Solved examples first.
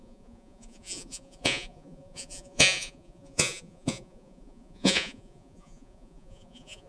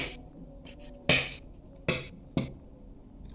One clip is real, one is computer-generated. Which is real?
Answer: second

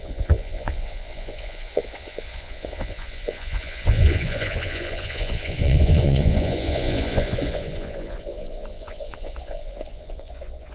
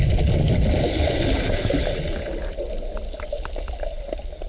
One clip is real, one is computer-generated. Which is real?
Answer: second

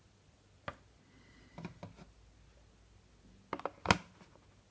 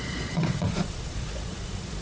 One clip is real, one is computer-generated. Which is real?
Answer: first